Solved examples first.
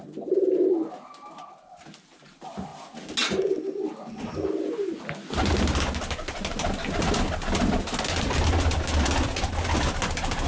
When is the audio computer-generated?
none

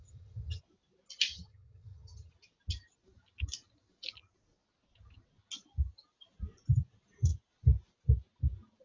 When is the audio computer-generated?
0.0-0.6 (vocoder, HiFi-GAN); 1.3-2.3

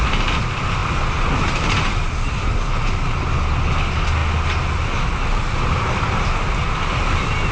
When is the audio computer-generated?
none

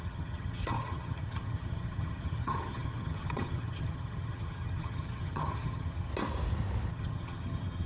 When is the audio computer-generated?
0.0-6.1 (vocoder, HiFi-GAN); 6.9-7.9

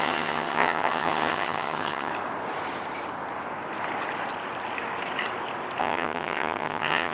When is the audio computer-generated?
0.0-2.1 (vocoder, HiFi-GAN); 5.8-7.1

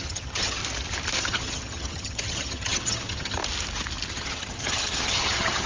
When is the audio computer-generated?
0.0-0.6 (vocoder, HiFi-GAN); 1.2-3.4; 4.1-5.7

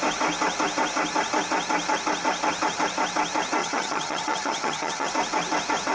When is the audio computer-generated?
3.6-5.1 (vocoder, HiFi-GAN)

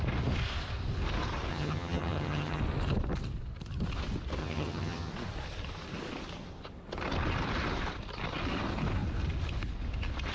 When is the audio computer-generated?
1.5-2.6 (vocoder, HiFi-GAN); 4.4-5.1